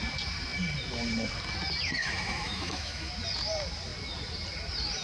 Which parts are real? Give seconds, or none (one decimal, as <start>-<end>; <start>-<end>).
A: 0.0-2.0; 3.1-5.0